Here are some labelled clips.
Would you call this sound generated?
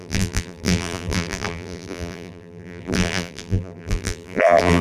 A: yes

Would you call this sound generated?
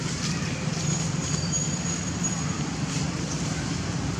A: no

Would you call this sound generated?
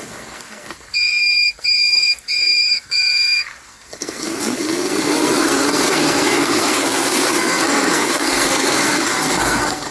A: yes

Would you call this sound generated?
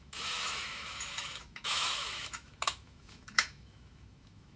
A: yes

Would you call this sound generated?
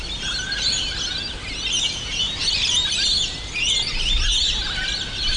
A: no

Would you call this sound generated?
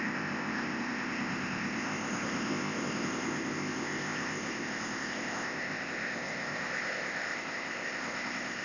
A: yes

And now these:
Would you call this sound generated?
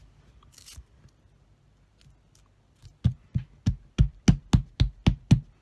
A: no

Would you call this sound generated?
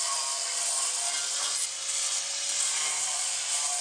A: no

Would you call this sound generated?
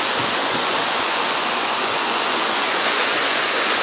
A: yes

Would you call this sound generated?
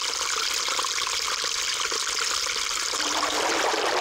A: no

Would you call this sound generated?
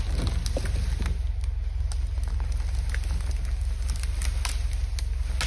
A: no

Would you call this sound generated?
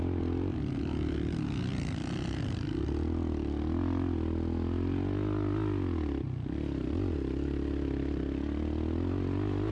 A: no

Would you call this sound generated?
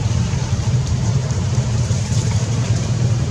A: yes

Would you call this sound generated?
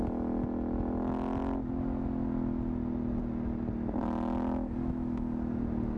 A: no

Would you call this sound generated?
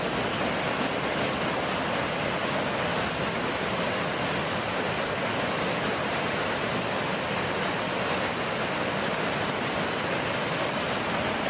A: no